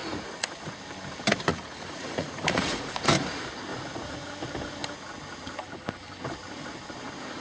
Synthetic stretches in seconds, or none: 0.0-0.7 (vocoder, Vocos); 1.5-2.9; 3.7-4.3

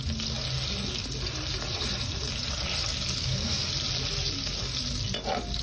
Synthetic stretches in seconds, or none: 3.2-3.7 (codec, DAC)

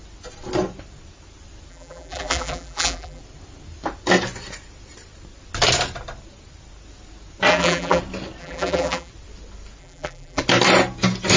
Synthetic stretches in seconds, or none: 1.7-3.2 (vocoder, BigVGAN v2); 7.5-8.0; 8.4-9.1; 9.8-10.4

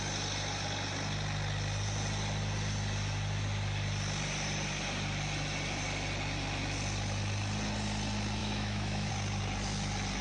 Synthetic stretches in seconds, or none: 8.4-9.1 (autoencoder, DAC-VAE)